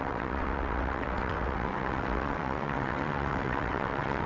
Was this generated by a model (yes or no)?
yes